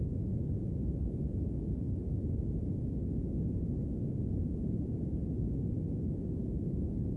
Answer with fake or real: real